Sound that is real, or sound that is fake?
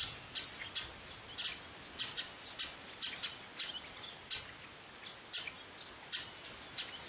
real